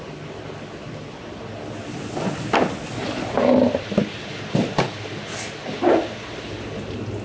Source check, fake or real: real